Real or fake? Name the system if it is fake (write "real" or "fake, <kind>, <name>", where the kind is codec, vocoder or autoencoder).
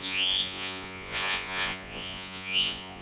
fake, vocoder, Vocos